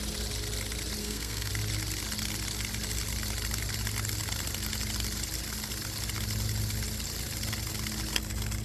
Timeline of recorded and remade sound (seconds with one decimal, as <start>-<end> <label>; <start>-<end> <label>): 0.0-1.0 recorded; 1.0-1.5 remade; 1.5-8.6 recorded